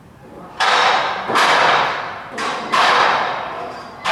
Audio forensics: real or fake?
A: fake